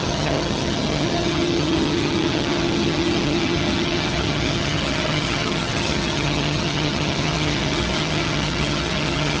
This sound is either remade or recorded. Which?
remade